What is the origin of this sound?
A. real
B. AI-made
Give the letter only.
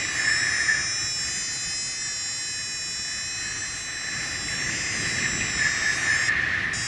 A